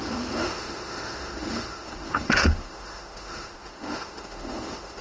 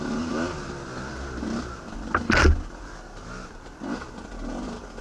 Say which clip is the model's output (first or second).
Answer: first